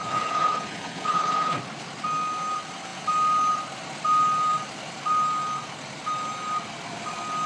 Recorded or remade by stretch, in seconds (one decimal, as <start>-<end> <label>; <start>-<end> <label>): 0.0-1.6 remade; 1.6-7.5 recorded